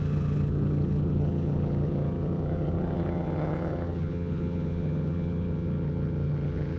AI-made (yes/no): yes